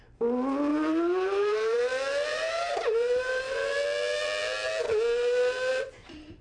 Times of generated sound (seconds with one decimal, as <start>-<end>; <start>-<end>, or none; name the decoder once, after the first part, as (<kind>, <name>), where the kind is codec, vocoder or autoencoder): 0.7-1.8 (vocoder, BigVGAN v2); 2.3-3.7